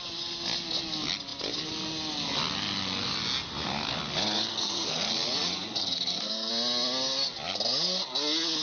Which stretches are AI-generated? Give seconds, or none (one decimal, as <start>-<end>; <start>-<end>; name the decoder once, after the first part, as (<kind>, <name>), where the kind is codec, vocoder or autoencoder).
4.5-5.1 (codec, SNAC); 5.8-6.5